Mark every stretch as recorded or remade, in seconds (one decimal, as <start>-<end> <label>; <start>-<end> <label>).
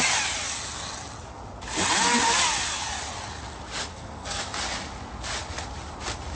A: 0.0-3.9 recorded; 3.9-4.4 remade; 4.4-6.3 recorded